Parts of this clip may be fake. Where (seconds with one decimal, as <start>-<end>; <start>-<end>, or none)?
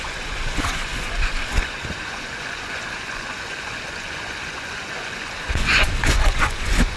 0.0-7.0